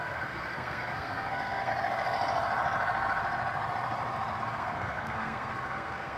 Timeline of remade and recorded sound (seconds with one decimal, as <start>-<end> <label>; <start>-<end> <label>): 0.0-1.7 remade; 1.7-4.5 recorded; 4.5-6.2 remade